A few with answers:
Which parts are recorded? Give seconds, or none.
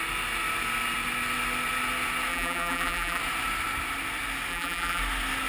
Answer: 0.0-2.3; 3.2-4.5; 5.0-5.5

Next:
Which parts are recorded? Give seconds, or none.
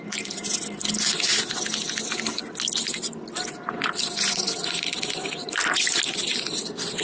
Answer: 0.0-7.0